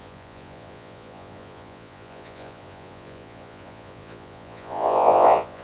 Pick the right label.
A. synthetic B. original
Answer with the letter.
A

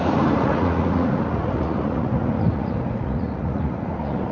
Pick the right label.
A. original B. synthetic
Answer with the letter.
B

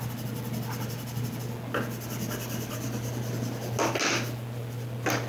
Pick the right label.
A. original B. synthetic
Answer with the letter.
A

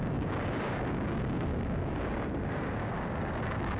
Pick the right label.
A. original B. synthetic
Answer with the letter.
B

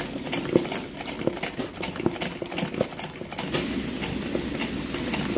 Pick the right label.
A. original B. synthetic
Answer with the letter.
A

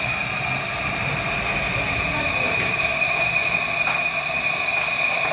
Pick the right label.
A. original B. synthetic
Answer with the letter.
A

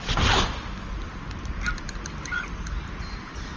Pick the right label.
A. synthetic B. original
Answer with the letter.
B